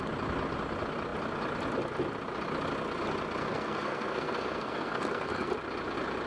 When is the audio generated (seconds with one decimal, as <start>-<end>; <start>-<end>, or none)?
3.4-5.5